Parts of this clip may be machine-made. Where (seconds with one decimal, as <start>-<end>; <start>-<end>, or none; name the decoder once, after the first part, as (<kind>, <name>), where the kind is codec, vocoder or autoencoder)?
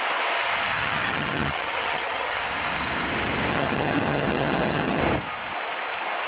0.7-2.4 (vocoder, HiFi-GAN); 3.5-5.0